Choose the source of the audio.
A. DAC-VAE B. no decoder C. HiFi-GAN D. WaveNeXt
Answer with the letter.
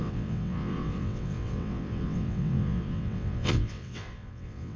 D